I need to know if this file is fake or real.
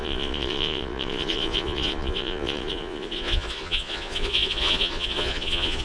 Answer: fake